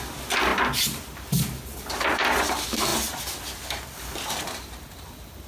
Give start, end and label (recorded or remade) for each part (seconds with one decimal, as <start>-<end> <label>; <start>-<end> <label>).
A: 0.0-5.5 recorded